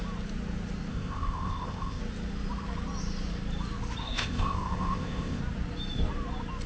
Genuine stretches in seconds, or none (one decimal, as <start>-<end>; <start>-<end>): 0.0-0.9; 2.0-4.0; 5.4-6.7

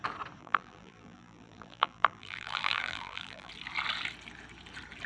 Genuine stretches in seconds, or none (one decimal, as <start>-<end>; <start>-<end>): 0.0-0.4; 3.5-5.1

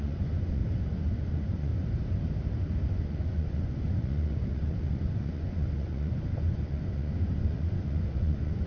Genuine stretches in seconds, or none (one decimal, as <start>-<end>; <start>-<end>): 0.6-1.2; 1.7-2.9

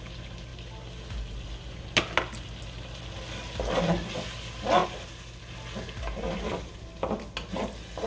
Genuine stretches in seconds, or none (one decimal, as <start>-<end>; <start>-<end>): 0.0-8.1